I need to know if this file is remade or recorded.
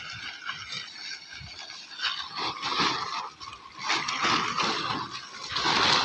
recorded